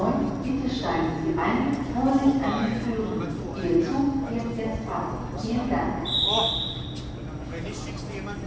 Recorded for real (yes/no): yes